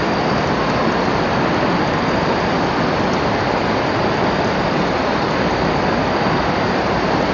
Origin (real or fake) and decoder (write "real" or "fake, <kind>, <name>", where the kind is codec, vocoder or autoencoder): real